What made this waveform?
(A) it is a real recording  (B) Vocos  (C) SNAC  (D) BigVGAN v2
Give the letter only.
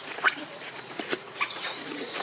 B